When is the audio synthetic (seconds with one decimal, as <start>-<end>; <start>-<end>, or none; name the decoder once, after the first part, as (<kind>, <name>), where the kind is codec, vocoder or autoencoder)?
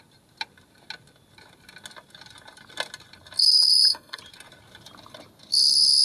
3.4-4.2 (codec, SNAC)